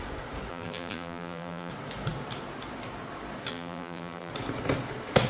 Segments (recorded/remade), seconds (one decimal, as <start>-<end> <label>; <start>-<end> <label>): 0.0-0.5 recorded; 0.5-1.7 remade; 1.7-3.5 recorded; 3.5-4.3 remade; 4.3-5.3 recorded